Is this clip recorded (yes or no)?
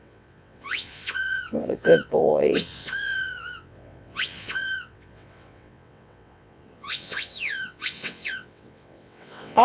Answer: no